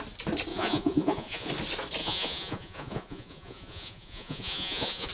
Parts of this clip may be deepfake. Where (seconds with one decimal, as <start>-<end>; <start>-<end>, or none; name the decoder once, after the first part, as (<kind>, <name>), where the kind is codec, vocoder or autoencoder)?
0.5-1.5 (vocoder, Vocos); 2.0-5.1